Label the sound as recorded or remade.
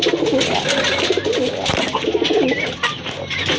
recorded